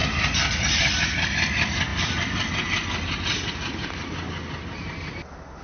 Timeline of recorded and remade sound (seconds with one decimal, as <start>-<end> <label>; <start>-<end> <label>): 0.0-5.6 recorded